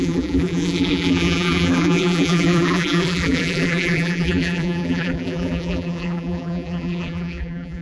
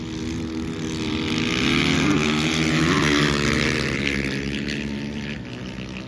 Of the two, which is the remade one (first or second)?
first